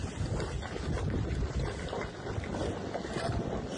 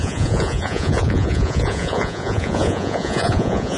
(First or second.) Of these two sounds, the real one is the first